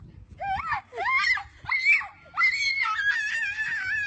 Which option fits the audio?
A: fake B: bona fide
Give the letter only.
B